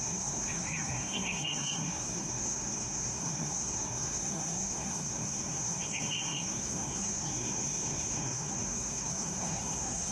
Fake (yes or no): yes